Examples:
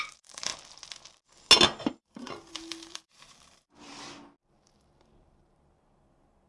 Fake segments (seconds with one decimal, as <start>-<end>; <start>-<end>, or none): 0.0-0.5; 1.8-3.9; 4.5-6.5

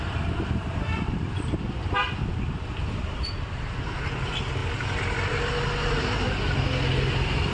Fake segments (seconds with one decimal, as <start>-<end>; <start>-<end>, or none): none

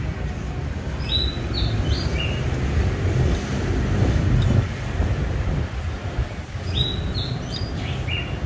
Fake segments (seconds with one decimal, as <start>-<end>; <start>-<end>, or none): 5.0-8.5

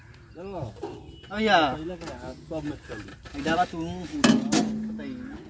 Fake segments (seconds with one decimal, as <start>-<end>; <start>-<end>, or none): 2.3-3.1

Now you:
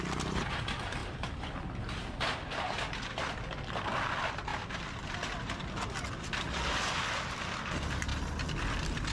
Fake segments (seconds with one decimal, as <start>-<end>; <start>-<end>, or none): 1.0-1.7; 4.5-5.5